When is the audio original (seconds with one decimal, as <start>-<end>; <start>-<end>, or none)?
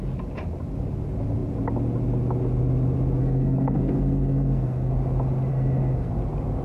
0.0-3.2; 4.9-5.5; 6.1-6.6